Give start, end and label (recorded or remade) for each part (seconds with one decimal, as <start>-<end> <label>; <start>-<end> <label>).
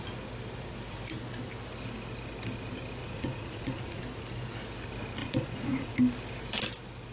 0.0-3.0 recorded; 3.0-4.0 remade; 4.0-5.2 recorded; 5.2-5.9 remade; 5.9-7.1 recorded